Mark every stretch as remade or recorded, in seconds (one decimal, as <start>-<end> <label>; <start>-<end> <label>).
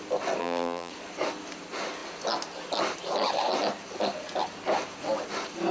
0.0-0.4 recorded; 0.4-0.9 remade; 0.9-5.7 recorded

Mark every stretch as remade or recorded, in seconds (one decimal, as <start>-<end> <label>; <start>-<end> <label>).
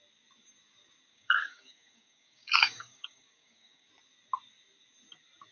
0.0-1.1 recorded; 1.1-3.9 remade; 3.9-5.5 recorded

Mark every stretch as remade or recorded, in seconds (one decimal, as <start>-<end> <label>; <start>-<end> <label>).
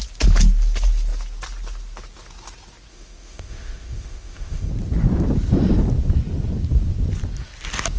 0.0-2.9 recorded; 2.9-4.7 remade; 4.7-8.0 recorded